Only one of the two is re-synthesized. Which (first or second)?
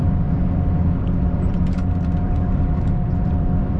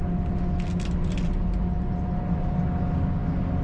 first